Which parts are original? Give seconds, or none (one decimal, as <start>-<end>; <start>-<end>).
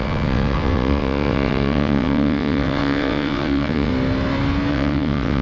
3.9-4.7